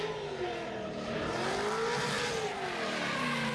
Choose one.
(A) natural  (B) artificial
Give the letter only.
A